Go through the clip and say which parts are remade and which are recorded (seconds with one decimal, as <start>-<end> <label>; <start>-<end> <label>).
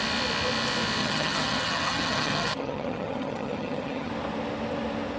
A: 0.0-1.0 recorded; 1.0-4.1 remade; 4.1-5.2 recorded